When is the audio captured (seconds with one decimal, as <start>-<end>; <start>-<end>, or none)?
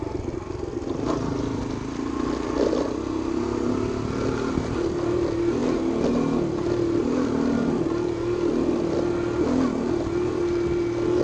0.0-11.2